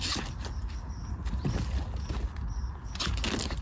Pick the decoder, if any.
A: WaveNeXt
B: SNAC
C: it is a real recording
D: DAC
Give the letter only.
C